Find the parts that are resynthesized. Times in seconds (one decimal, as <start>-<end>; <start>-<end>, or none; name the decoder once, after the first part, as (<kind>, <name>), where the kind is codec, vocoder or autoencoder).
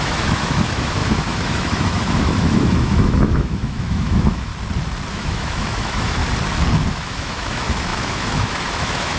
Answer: 0.0-4.5 (autoencoder, DAC-VAE); 5.1-6.2; 6.9-9.2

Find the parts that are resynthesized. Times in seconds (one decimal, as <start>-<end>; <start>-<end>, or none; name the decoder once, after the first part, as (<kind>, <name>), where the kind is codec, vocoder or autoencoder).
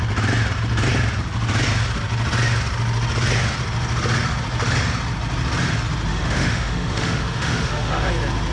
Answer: 6.1-8.1 (autoencoder, DAC-VAE)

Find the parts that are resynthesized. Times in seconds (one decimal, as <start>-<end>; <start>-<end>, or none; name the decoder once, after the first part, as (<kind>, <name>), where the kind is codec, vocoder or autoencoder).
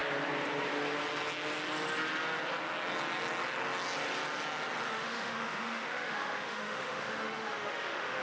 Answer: 4.9-8.2 (autoencoder, DAC-VAE)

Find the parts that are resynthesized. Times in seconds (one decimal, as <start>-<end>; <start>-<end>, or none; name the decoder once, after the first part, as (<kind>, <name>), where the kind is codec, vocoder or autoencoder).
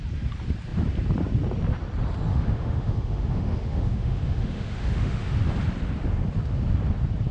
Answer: 2.3-5.4 (autoencoder, DAC-VAE)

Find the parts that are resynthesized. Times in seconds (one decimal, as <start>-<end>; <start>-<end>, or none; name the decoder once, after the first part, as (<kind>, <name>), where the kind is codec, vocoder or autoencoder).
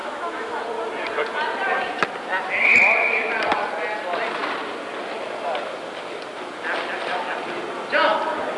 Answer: 0.0-0.6 (autoencoder, DAC-VAE)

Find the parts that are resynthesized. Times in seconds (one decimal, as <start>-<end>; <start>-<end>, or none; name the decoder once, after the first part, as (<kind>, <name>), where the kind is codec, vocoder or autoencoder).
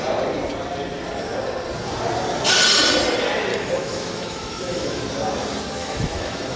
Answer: 3.5-5.0 (autoencoder, DAC-VAE); 5.8-6.6